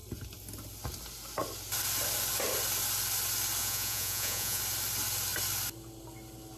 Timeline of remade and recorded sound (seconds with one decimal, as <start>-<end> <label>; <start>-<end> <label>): 0.0-3.6 recorded; 3.6-4.6 remade; 4.6-6.6 recorded